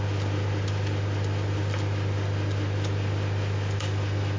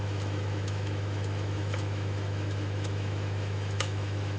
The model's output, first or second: second